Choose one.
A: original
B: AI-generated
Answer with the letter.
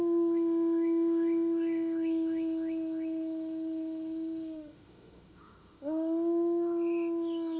B